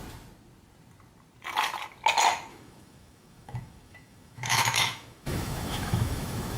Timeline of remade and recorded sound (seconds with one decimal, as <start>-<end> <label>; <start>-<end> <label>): 0.0-2.5 recorded; 2.5-6.6 remade